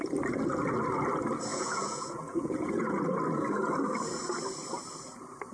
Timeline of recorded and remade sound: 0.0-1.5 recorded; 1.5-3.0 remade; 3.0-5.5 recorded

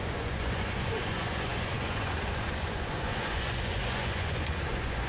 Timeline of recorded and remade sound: 0.0-5.1 remade

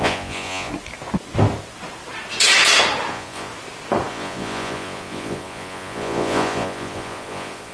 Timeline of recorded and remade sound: 0.0-0.7 remade; 0.7-3.1 recorded; 3.1-3.5 remade; 3.5-4.1 recorded; 4.1-7.7 remade